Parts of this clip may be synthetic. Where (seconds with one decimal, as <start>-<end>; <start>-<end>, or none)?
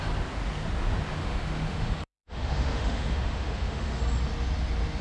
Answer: 1.2-4.0